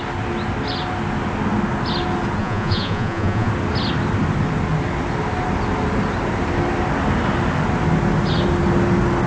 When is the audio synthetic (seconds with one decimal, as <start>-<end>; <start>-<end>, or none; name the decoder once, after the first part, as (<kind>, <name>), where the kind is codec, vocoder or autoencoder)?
2.4-3.5 (vocoder, Vocos)